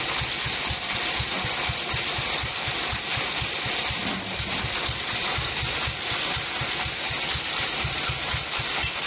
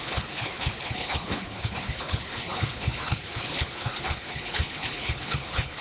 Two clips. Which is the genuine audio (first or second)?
first